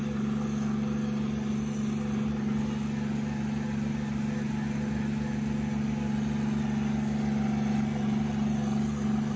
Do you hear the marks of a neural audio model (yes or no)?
no